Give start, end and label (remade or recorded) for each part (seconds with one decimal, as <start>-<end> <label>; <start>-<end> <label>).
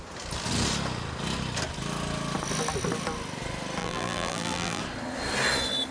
0.0-3.8 recorded; 3.8-4.8 remade; 4.8-5.9 recorded